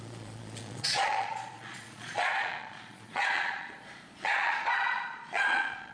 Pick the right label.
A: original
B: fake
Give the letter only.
B